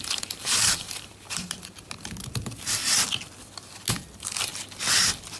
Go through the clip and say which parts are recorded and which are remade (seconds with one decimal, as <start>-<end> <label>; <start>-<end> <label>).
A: 0.0-2.8 remade; 2.8-3.9 recorded; 3.9-4.5 remade; 4.5-5.4 recorded